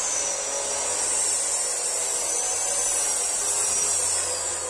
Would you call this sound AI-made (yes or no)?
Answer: no